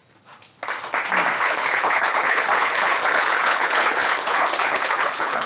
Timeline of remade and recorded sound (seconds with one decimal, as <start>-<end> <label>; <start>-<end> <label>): 0.0-1.4 recorded; 1.4-5.5 remade